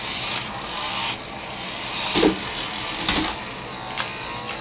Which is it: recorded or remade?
recorded